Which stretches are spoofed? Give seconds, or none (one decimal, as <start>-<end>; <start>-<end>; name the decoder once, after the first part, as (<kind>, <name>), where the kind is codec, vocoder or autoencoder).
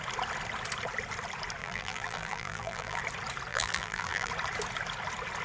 1.6-3.0 (vocoder, BigVGAN v2); 3.5-4.3